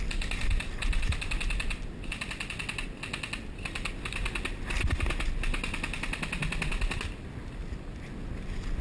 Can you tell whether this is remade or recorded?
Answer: recorded